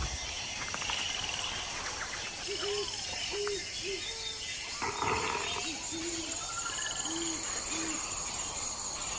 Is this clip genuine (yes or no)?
yes